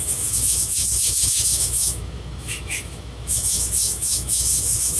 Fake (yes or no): yes